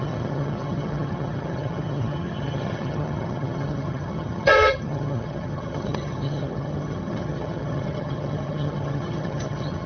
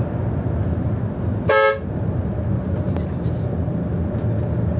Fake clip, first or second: first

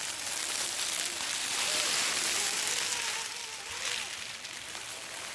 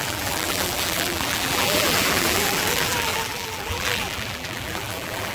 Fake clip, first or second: second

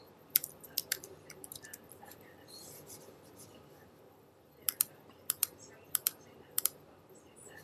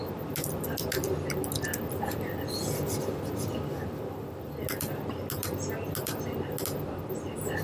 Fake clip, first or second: first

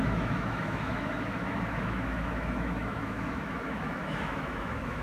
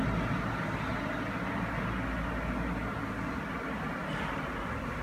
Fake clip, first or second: first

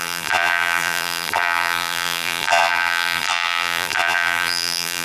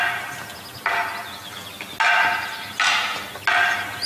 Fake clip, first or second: first